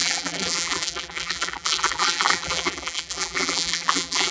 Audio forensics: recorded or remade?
remade